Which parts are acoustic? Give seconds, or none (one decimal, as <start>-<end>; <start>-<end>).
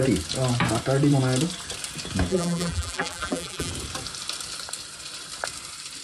0.0-2.3; 3.7-6.0